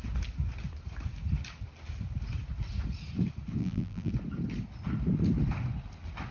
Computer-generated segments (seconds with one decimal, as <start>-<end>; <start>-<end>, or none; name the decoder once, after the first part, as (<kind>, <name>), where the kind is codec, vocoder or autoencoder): 3.6-4.1 (vocoder, BigVGAN v2)